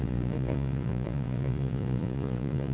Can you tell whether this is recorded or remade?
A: remade